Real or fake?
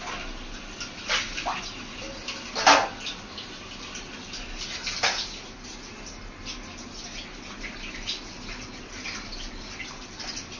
real